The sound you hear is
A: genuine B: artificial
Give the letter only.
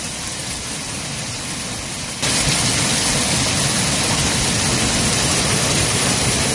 A